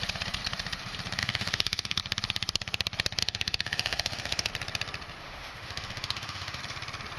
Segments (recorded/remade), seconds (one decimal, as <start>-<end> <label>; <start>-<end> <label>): 0.0-1.2 recorded; 1.2-2.0 remade; 2.0-3.2 recorded; 3.2-4.5 remade; 4.5-5.2 recorded; 5.2-6.6 remade; 6.6-7.2 recorded